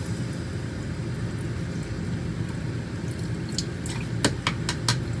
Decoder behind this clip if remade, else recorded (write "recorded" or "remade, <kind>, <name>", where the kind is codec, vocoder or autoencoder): recorded